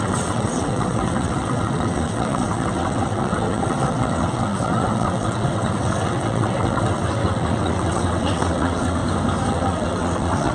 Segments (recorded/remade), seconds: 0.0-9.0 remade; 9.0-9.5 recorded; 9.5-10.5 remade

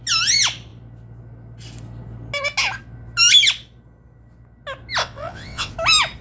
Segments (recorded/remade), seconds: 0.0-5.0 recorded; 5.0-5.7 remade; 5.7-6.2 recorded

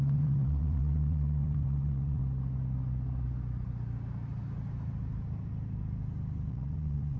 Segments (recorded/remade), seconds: 0.0-2.2 remade; 2.2-6.5 recorded; 6.5-7.2 remade

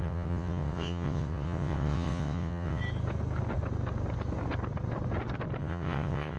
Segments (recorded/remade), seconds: 0.0-2.8 remade; 2.8-5.6 recorded; 5.6-6.4 remade

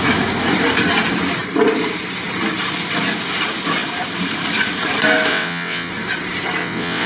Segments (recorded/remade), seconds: 0.0-5.3 recorded; 5.3-5.9 remade; 5.9-6.6 recorded; 6.6-7.1 remade